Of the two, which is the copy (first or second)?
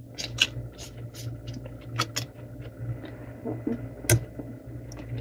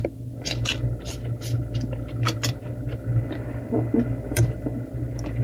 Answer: second